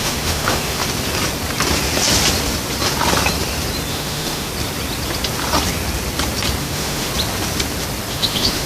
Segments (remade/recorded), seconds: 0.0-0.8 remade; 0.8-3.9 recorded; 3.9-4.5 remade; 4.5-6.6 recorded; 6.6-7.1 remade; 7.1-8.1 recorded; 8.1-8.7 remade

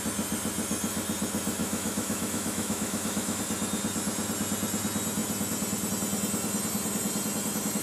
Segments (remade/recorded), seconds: 0.0-1.6 recorded; 1.6-3.4 remade; 3.4-7.8 recorded

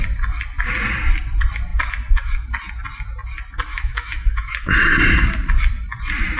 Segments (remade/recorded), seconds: 0.0-3.7 recorded; 3.7-4.7 remade; 4.7-6.4 recorded

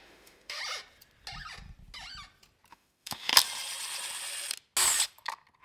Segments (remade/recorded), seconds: 0.0-0.6 remade; 0.6-2.7 recorded; 2.7-3.3 remade; 3.3-5.6 recorded